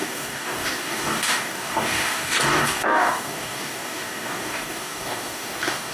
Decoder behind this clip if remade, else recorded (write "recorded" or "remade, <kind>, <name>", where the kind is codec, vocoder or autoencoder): remade, codec, DAC